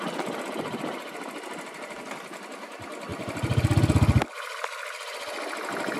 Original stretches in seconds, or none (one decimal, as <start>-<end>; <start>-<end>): 0.0-6.0